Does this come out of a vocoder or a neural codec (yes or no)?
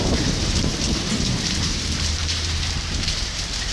yes